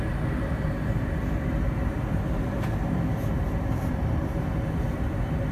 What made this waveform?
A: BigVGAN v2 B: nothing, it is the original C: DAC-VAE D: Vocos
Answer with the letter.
A